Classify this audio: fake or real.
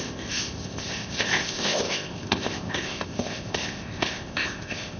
fake